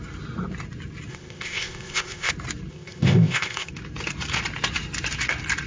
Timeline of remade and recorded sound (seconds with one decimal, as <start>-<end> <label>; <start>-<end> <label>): 0.0-1.1 recorded; 1.1-2.3 remade; 2.3-2.7 recorded; 2.7-3.7 remade; 3.7-5.7 recorded

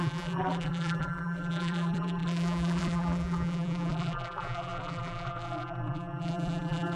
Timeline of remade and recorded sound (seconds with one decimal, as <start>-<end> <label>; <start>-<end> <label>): 0.0-7.0 remade

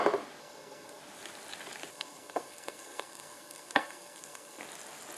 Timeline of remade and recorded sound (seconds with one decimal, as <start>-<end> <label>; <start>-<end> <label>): 0.0-0.4 recorded; 0.4-1.0 remade; 1.0-1.9 recorded; 1.9-4.6 remade; 4.6-5.2 recorded

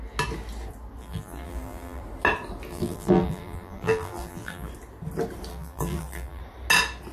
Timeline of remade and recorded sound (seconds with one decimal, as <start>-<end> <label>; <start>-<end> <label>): 0.0-1.0 recorded; 1.0-2.0 remade; 2.0-2.7 recorded; 2.7-4.7 remade; 4.7-5.5 recorded; 5.5-6.4 remade; 6.4-7.1 recorded

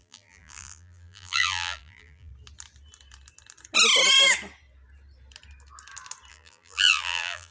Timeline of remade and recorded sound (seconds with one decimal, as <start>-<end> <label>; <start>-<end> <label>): 0.0-2.3 remade; 2.3-6.3 recorded; 6.3-7.5 remade

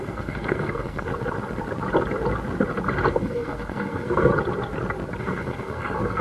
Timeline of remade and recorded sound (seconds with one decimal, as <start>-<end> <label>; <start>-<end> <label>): 0.0-1.1 remade; 1.1-3.1 recorded; 3.1-4.3 remade; 4.3-5.2 recorded; 5.2-6.2 remade

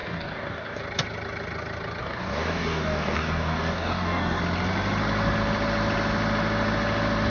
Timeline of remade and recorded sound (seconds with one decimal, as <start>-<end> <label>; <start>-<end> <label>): 0.0-0.8 remade; 0.8-2.0 recorded; 2.0-4.4 remade; 4.4-7.3 recorded

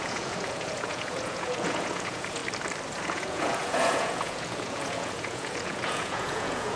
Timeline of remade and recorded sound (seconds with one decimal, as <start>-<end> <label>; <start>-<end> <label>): 0.0-2.4 remade; 2.4-3.0 recorded; 3.0-6.8 remade